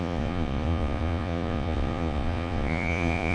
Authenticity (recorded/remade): remade